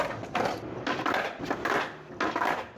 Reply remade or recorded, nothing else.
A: recorded